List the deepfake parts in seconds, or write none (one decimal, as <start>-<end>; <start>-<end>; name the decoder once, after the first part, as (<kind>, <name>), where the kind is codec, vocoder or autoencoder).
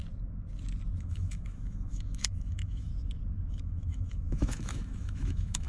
1.0-2.9 (autoencoder, DAC-VAE); 3.5-5.7